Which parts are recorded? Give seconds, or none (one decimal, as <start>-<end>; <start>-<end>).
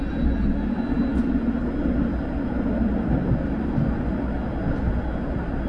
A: 0.0-5.7